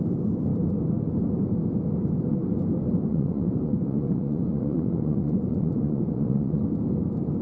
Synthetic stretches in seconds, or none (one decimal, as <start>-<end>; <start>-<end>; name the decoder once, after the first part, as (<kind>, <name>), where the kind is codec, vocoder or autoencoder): 3.1-6.6 (vocoder, Vocos)